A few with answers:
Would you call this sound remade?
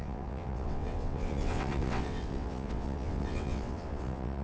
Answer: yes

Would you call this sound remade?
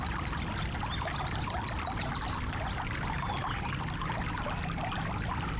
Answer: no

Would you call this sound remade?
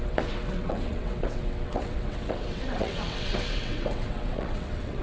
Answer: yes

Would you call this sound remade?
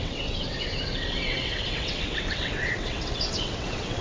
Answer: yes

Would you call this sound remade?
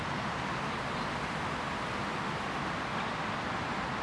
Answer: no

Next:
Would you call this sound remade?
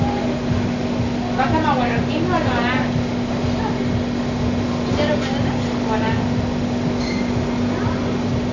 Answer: no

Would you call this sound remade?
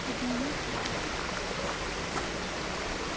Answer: no